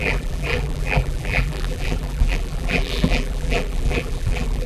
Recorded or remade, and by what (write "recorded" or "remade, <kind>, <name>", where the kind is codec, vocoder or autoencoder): remade, vocoder, BigVGAN v2